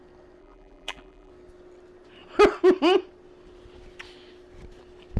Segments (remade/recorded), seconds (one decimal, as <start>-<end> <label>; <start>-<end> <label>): 0.0-0.4 recorded; 0.4-1.3 remade; 1.3-5.2 recorded